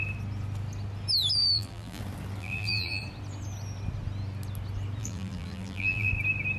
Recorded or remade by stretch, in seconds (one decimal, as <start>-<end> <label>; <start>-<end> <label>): 0.0-1.4 recorded; 1.4-2.0 remade; 2.0-2.4 recorded; 2.4-3.0 remade; 3.0-5.0 recorded; 5.0-6.1 remade; 6.1-6.6 recorded